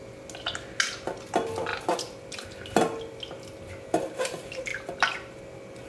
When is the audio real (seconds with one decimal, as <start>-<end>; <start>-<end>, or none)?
0.0-5.9